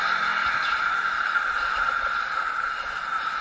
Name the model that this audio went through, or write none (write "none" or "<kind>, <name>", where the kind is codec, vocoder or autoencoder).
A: none